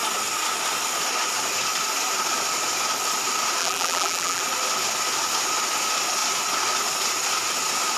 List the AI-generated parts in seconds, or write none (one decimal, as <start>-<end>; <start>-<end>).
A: 3.6-4.4